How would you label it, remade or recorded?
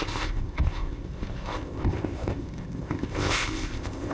remade